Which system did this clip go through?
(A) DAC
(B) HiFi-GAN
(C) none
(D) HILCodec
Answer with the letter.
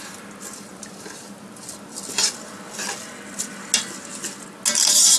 C